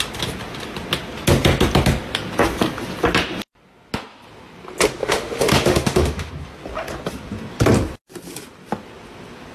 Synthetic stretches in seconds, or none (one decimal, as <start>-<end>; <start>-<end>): 5.0-6.3